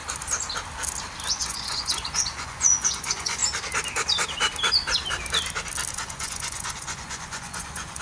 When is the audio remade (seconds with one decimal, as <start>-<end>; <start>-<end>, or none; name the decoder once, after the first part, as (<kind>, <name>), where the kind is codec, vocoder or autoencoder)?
1.3-3.4 (vocoder, Vocos); 5.9-8.0